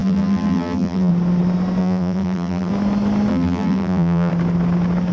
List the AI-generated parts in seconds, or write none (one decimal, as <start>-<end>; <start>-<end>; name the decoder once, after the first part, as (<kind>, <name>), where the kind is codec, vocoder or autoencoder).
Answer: 0.0-1.1 (vocoder, BigVGAN v2); 1.8-2.7; 3.3-4.3